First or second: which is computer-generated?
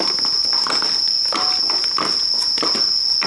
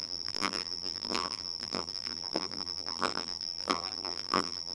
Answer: second